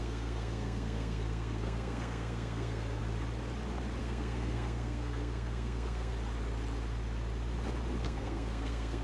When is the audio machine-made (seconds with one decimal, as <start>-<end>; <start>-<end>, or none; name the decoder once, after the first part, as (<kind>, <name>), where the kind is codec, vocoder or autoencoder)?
0.0-3.0 (codec, SNAC); 4.0-6.1; 8.0-9.0